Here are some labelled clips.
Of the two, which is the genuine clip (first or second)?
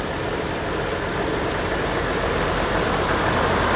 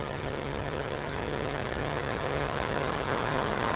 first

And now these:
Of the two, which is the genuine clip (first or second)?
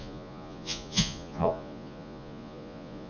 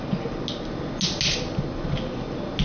second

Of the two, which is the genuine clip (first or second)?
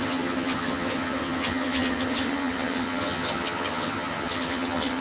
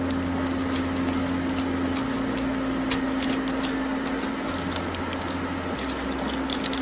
second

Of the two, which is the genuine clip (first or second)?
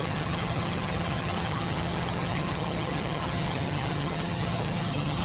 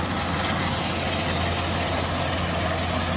second